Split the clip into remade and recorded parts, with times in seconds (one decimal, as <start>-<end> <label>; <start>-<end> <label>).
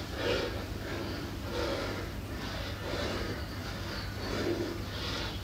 0.0-5.4 recorded